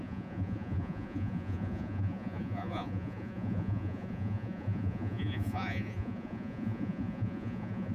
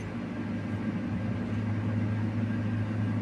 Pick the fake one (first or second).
first